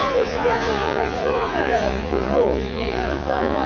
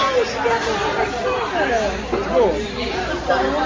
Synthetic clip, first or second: first